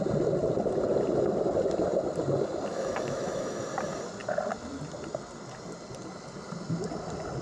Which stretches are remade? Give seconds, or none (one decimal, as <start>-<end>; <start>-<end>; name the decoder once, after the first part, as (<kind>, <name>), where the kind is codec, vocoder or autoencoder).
2.7-3.6 (autoencoder, DAC-VAE)